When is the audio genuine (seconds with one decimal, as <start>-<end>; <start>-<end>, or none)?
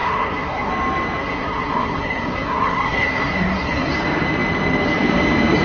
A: 0.7-1.2; 3.9-5.6